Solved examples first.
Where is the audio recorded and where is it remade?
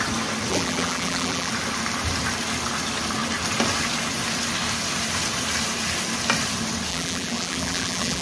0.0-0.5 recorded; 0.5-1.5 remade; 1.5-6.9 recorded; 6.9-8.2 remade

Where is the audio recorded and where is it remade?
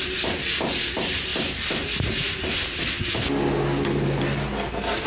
0.0-5.1 recorded